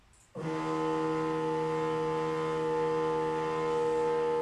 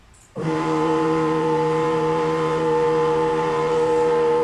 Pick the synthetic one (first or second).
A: second